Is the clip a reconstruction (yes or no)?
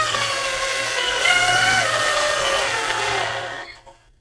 yes